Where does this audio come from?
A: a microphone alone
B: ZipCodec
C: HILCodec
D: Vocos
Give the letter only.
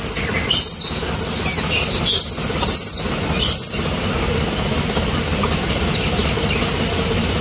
A